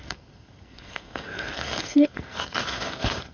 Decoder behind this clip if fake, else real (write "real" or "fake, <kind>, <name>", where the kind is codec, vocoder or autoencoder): fake, codec, SNAC